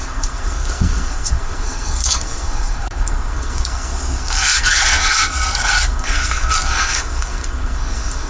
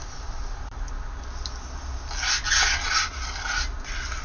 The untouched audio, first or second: second